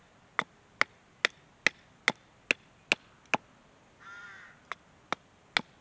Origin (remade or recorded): recorded